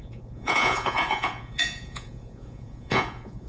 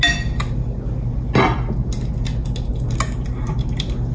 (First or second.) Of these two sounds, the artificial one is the first